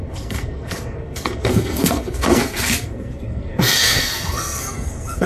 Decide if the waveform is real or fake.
fake